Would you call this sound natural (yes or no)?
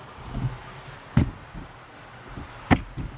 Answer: yes